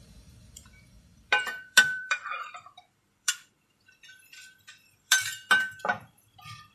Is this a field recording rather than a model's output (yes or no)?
no